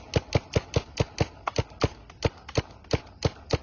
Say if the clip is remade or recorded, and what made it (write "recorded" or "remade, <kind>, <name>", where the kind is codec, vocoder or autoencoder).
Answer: recorded